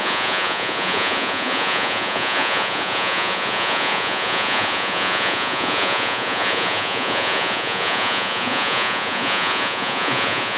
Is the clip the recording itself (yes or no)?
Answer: no